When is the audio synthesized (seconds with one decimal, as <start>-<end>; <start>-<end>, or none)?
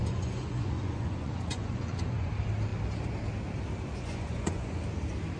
0.0-2.3; 3.9-4.8